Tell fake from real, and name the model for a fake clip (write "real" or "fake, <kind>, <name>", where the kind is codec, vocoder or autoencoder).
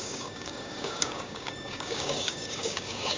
fake, codec, DAC